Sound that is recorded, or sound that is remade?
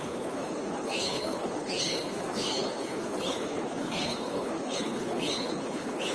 remade